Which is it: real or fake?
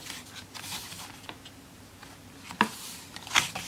real